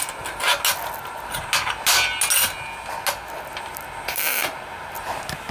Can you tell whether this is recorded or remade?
recorded